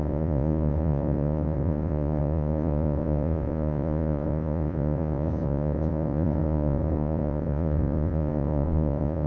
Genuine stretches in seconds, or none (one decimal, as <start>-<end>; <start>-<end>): none